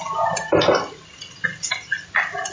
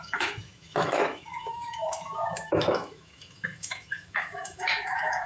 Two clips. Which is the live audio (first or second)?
first